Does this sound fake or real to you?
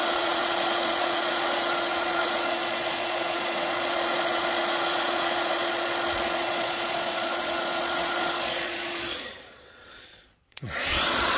fake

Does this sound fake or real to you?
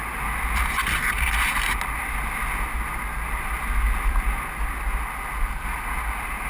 real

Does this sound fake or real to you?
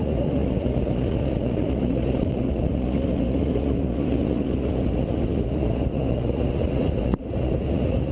fake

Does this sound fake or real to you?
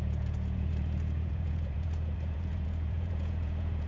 fake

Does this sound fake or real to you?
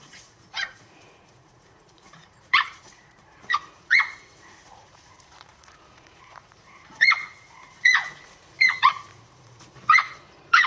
fake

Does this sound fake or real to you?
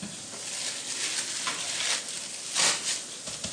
real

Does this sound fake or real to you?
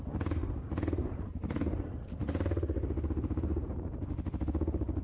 real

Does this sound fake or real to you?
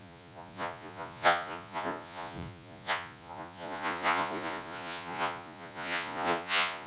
fake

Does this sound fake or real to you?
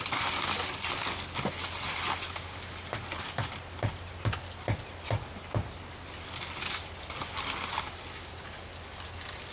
real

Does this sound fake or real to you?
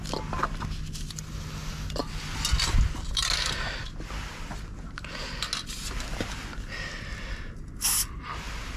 real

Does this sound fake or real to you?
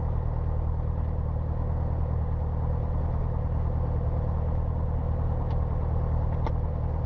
real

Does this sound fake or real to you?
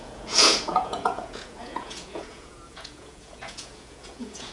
fake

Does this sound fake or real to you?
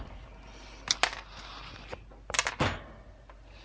real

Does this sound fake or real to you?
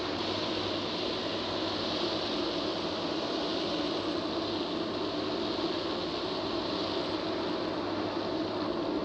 real